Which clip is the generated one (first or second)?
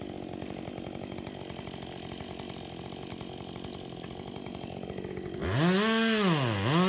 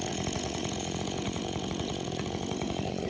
second